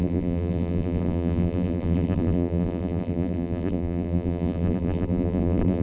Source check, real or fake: fake